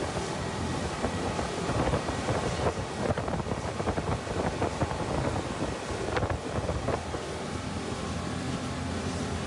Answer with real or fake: real